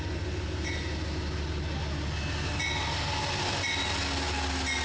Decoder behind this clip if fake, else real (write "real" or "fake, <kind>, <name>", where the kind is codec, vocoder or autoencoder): real